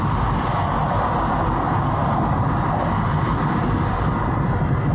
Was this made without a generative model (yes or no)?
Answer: yes